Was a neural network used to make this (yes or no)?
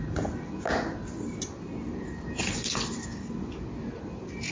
no